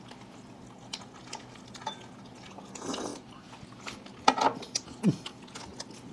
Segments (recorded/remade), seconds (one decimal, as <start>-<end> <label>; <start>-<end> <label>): 0.0-3.1 recorded; 3.1-3.7 remade; 3.7-6.1 recorded